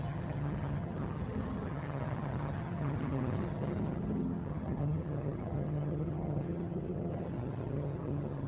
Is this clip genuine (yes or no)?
no